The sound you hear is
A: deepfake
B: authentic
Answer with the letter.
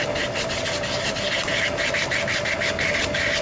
B